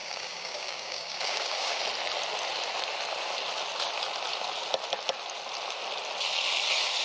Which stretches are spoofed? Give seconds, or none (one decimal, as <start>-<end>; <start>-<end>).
0.0-1.8